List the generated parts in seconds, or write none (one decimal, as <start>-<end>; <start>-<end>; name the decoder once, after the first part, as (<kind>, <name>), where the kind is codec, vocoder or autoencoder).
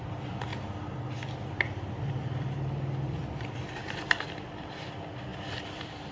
0.0-0.5 (vocoder, BigVGAN v2); 1.3-6.1